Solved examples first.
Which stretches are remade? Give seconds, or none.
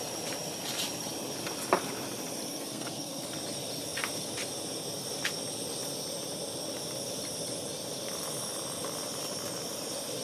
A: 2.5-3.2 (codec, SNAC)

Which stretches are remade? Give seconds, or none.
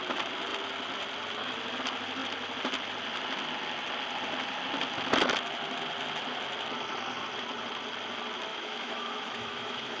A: 8.5-10.0 (autoencoder, DAC-VAE)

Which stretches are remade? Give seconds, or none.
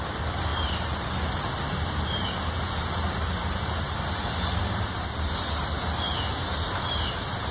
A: none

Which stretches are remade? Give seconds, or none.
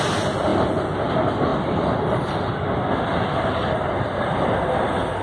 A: 0.5-1.1 (vocoder, BigVGAN v2); 1.5-4.6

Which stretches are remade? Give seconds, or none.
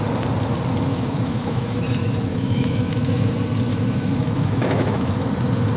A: 0.9-1.8 (autoencoder, DAC-VAE); 2.3-3.3; 3.7-5.1